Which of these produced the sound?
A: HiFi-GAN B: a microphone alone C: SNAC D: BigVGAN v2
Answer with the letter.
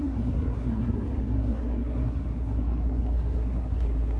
C